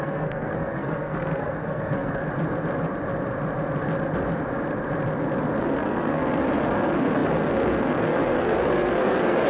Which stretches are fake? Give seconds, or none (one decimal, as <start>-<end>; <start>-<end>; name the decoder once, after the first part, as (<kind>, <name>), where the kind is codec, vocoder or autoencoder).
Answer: 0.0-2.2 (codec, SNAC); 5.6-9.5